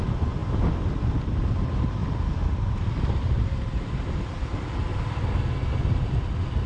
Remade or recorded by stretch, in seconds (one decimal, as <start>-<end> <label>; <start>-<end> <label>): 0.0-6.7 recorded

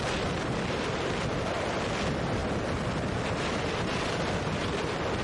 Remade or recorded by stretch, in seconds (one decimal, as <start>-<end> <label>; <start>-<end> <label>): 0.0-5.2 recorded

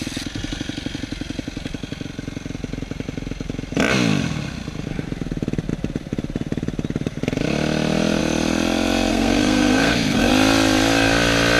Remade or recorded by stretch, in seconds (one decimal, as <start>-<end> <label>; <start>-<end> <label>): 0.0-9.1 recorded; 9.1-10.3 remade; 10.3-11.6 recorded

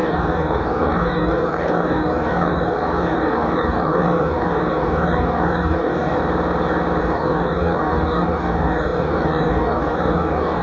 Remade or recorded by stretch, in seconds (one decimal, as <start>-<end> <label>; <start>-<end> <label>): 0.0-6.2 remade; 6.2-7.0 recorded; 7.0-10.6 remade

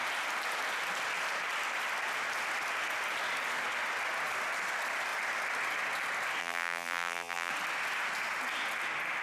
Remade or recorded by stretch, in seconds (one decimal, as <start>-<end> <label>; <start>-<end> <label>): 0.0-6.4 recorded; 6.4-7.5 remade; 7.5-9.2 recorded

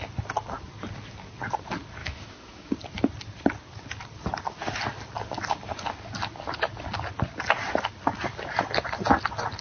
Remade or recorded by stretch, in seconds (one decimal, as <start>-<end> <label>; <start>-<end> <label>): 0.0-2.0 recorded; 2.0-2.7 remade; 2.7-9.6 recorded